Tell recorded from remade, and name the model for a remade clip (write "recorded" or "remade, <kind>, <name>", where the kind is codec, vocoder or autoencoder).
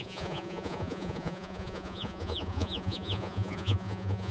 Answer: remade, vocoder, Vocos